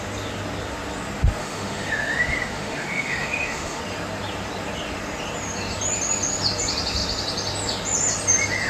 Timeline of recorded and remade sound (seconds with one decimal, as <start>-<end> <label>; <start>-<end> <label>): 0.0-1.4 recorded; 1.4-3.8 remade; 3.8-8.7 recorded